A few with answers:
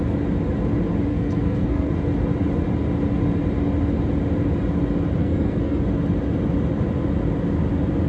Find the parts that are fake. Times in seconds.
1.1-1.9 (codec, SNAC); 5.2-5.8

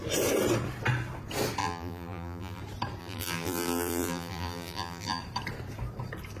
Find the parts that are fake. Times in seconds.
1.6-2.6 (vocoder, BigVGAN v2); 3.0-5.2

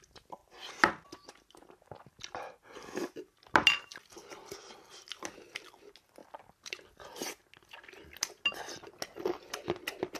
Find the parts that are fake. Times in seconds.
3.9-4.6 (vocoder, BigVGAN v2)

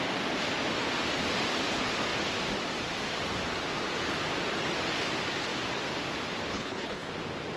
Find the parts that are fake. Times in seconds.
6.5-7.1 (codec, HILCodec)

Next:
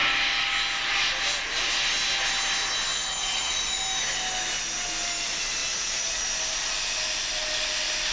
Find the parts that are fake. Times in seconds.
2.9-3.8 (vocoder, Vocos); 5.6-6.2